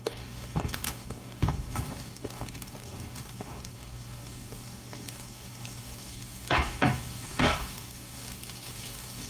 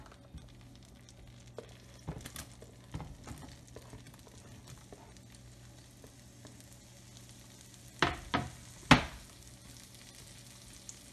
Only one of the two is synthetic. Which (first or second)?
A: first